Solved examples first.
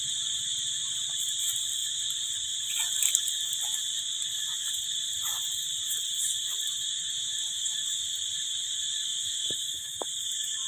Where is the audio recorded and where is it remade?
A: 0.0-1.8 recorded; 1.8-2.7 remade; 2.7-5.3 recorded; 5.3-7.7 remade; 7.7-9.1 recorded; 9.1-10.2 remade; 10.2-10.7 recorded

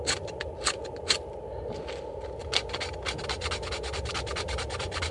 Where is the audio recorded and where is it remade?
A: 0.0-5.1 recorded

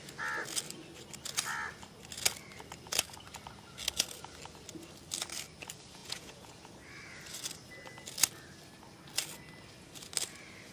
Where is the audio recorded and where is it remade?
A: 0.0-6.0 recorded; 6.0-6.5 remade; 6.5-10.7 recorded

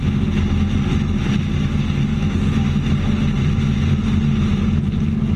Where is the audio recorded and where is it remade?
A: 0.0-2.1 recorded; 2.1-2.8 remade; 2.8-5.4 recorded

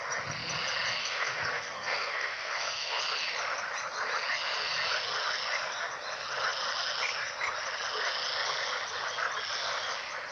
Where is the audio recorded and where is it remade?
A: 0.0-1.0 recorded; 1.0-3.0 remade; 3.0-10.3 recorded

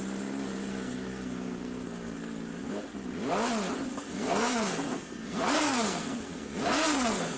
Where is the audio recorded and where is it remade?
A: 0.0-0.7 recorded; 0.7-2.7 remade; 2.7-3.9 recorded; 3.9-7.4 remade